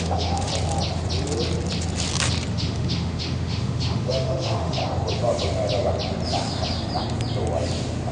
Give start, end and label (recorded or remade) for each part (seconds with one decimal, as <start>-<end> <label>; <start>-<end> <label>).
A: 0.0-0.5 remade; 0.5-2.5 recorded; 2.5-4.8 remade; 4.8-8.1 recorded